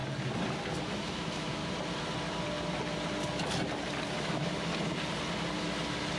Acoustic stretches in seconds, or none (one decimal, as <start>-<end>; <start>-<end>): 0.0-0.8; 1.6-4.1; 4.7-6.2